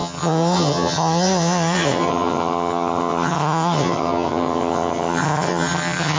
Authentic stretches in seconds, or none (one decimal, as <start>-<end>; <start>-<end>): none